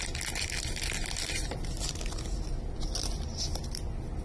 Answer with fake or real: real